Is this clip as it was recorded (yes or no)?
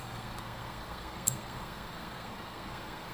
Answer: no